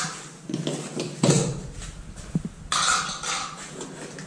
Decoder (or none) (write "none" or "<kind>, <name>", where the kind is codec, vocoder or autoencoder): none